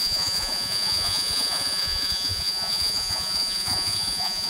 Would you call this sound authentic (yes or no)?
no